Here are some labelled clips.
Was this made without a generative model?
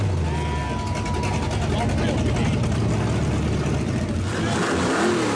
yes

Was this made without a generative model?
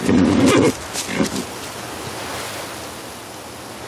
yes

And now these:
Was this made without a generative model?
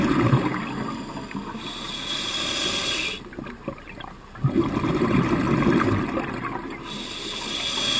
yes